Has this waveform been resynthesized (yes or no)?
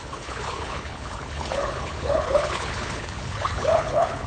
yes